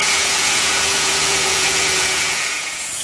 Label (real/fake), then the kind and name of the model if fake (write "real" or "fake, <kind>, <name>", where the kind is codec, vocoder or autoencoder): fake, vocoder, Vocos